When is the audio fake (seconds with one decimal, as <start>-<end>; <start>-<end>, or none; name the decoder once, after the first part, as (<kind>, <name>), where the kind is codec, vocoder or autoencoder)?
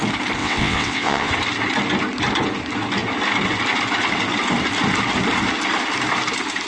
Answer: 0.4-1.3 (vocoder, WaveNeXt)